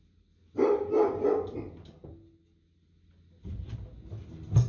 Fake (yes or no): no